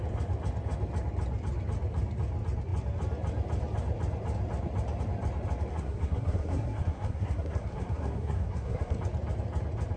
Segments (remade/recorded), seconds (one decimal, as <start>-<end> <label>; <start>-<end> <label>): 0.0-5.7 recorded; 5.7-9.0 remade; 9.0-10.0 recorded